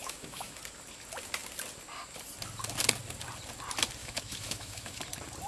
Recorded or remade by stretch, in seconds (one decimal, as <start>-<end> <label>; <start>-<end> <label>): 0.0-0.6 remade; 0.6-4.0 recorded; 4.0-5.0 remade; 5.0-5.5 recorded